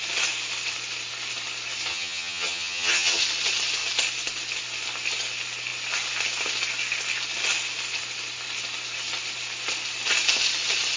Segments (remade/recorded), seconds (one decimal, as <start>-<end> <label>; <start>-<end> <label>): 0.0-1.9 recorded; 1.9-3.2 remade; 3.2-11.0 recorded